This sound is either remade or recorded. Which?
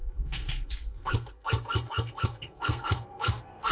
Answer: remade